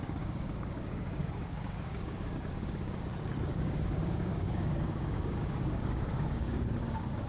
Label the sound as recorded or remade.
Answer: remade